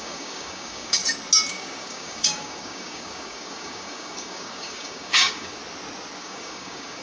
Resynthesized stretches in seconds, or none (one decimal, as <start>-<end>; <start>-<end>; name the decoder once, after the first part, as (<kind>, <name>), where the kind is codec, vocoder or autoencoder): 0.0-1.0 (codec, DAC); 1.5-5.6; 6.2-7.0